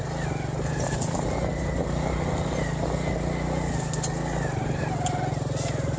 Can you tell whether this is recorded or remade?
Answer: recorded